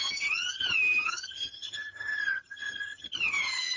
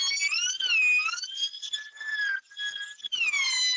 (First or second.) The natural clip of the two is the second